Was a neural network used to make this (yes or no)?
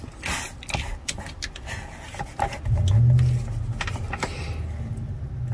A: no